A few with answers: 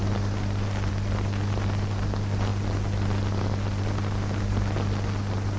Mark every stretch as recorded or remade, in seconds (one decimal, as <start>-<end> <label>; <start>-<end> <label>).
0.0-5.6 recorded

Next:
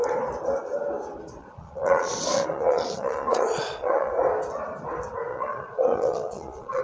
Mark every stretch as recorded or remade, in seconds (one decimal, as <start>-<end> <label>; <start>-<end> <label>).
0.0-1.4 recorded; 1.4-4.1 remade; 4.1-5.3 recorded; 5.3-6.8 remade

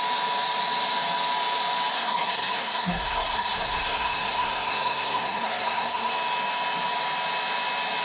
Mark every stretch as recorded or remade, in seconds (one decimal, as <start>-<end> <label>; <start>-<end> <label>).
0.0-1.9 recorded; 1.9-6.1 remade; 6.1-8.0 recorded

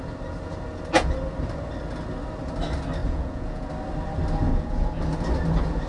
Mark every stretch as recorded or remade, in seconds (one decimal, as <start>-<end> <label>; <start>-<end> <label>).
0.0-3.0 recorded; 3.0-3.7 remade; 3.7-4.5 recorded; 4.5-5.0 remade; 5.0-5.9 recorded

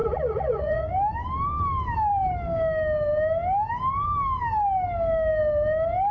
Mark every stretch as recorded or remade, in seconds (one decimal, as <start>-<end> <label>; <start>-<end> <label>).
0.0-0.9 remade; 0.9-6.1 recorded

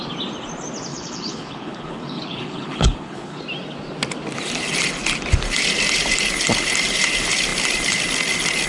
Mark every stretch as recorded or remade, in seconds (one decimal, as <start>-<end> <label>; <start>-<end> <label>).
0.0-0.9 recorded; 0.9-3.4 remade; 3.4-8.7 recorded